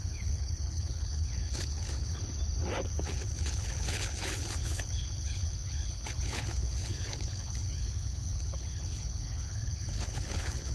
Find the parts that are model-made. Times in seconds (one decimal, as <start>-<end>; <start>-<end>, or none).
0.0-2.2; 2.8-10.7